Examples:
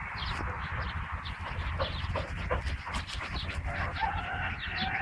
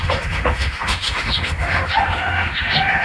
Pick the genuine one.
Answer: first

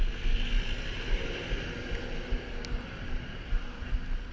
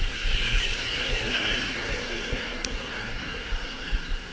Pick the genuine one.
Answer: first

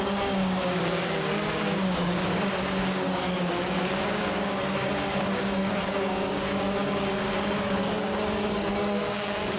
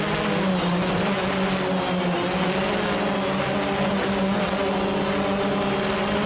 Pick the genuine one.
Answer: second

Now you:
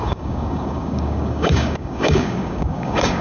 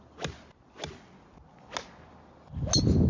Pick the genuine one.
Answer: second